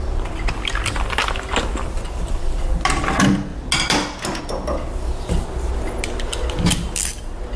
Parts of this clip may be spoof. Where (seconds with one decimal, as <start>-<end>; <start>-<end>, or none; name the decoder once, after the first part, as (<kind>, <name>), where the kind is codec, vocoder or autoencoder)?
none